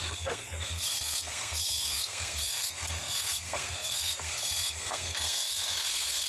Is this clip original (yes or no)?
no